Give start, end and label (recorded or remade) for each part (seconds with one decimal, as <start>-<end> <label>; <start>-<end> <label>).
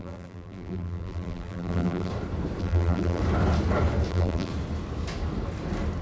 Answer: 0.0-2.1 remade; 2.1-2.6 recorded; 2.6-3.2 remade; 3.2-4.1 recorded; 4.1-4.5 remade; 4.5-6.0 recorded